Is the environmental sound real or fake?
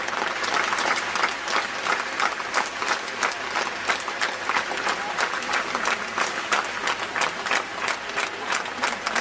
fake